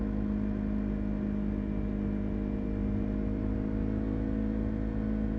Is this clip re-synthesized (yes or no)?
no